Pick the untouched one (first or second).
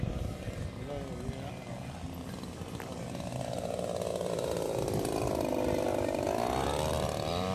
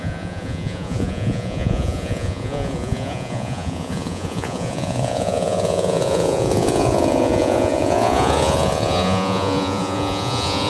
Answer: first